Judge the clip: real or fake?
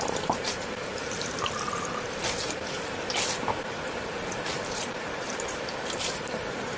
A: fake